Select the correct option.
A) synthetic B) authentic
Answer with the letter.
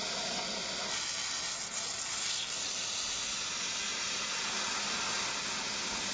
B